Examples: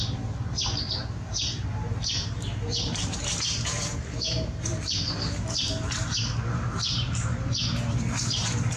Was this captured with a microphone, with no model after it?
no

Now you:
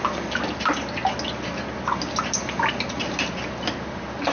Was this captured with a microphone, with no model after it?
yes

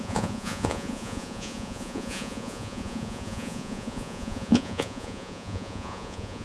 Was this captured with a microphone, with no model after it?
no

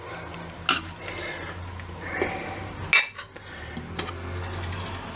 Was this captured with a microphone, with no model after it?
yes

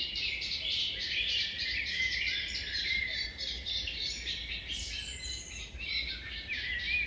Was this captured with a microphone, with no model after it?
no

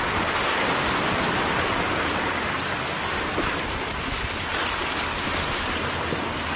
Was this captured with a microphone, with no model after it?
yes